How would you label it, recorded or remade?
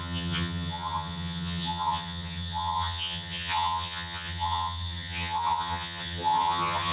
remade